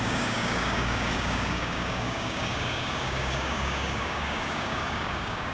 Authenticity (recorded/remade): remade